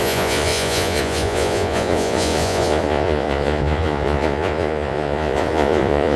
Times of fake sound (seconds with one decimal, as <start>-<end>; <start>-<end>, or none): 0.0-6.2